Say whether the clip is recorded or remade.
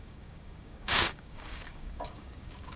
remade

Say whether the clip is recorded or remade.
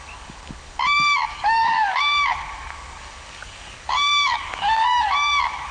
remade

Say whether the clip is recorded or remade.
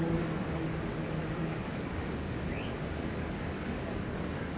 remade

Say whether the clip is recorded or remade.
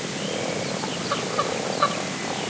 recorded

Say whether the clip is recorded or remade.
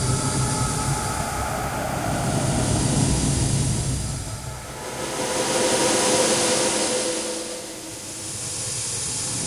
recorded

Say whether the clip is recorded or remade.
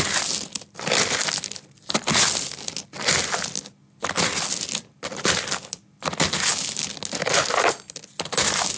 recorded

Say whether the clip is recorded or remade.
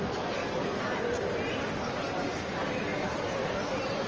recorded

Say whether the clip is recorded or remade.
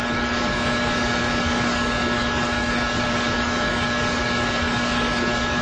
remade